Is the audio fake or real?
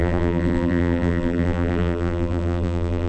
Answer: fake